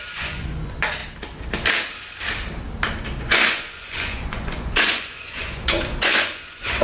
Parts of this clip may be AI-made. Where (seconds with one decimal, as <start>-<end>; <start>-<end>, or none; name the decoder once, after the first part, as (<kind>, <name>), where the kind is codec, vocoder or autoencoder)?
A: 0.0-1.0 (vocoder, Vocos); 3.2-6.8